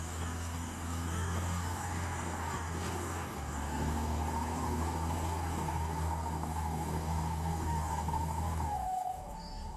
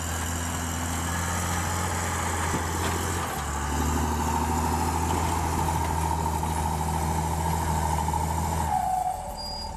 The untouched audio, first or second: second